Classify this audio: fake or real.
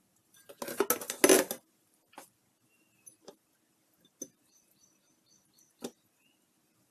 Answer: real